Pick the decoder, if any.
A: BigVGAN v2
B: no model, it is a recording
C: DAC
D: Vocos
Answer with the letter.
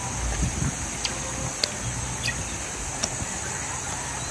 B